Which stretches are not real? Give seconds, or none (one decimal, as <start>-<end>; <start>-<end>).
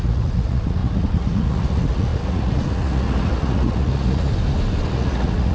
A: 0.0-4.3; 4.9-5.5